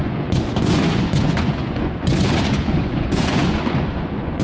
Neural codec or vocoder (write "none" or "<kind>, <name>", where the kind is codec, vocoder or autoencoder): vocoder, Vocos